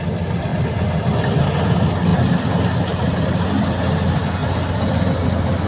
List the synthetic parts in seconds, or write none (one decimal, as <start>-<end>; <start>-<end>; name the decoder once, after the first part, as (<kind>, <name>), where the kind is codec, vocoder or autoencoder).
0.5-1.3 (vocoder, BigVGAN v2)